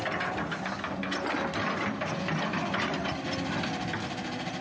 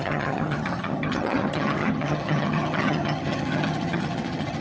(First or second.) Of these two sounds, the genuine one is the first